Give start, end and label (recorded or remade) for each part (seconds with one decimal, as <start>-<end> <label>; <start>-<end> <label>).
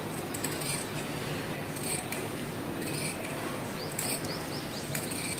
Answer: 0.0-5.4 recorded